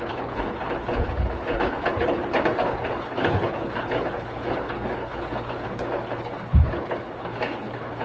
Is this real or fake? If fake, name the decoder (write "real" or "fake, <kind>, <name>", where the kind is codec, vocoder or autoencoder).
fake, codec, HILCodec